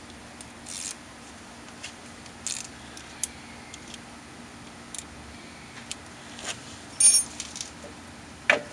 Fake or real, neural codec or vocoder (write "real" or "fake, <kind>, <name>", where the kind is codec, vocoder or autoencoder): real